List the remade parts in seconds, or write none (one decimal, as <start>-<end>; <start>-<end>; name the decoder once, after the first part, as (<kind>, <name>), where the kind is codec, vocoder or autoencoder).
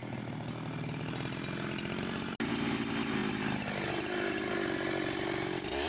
none